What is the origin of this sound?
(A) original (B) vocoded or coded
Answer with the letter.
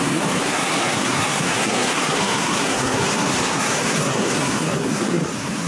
B